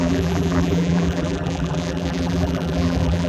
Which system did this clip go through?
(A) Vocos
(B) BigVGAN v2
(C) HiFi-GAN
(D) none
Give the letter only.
B